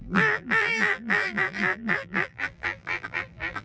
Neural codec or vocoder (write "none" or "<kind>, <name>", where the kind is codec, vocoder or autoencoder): vocoder, BigVGAN v2